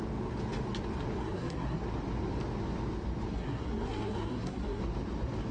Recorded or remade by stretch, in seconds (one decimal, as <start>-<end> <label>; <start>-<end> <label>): 0.0-1.2 recorded; 1.2-1.8 remade; 1.8-3.3 recorded; 3.3-4.8 remade; 4.8-5.5 recorded